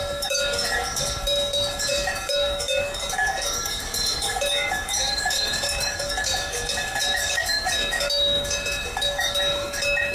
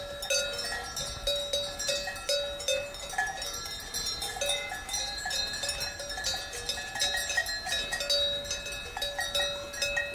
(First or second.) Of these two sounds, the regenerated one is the first